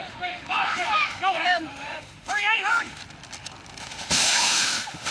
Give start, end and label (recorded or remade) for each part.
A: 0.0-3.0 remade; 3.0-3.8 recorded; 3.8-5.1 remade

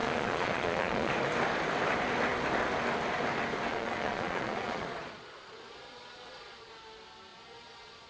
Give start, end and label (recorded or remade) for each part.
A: 0.0-1.1 remade; 1.1-3.7 recorded; 3.7-6.7 remade; 6.7-7.3 recorded; 7.3-8.1 remade

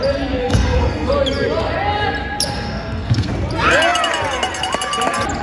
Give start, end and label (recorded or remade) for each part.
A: 0.0-0.4 recorded; 0.4-1.1 remade; 1.1-2.5 recorded; 2.5-3.3 remade; 3.3-5.4 recorded

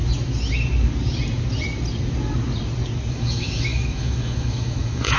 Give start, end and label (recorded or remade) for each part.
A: 0.0-3.1 recorded; 3.1-5.2 remade